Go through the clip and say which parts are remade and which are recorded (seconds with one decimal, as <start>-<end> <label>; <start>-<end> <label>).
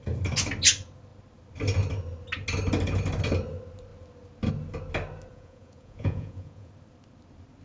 0.0-5.3 recorded; 5.3-6.7 remade; 6.7-7.6 recorded